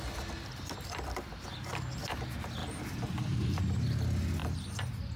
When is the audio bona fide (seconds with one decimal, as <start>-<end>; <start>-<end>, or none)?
0.0-2.6; 3.6-4.4